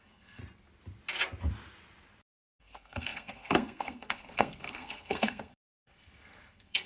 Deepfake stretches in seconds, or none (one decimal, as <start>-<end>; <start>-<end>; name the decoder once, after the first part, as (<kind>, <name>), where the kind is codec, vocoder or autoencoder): 0.0-0.4 (codec, SNAC); 2.6-6.9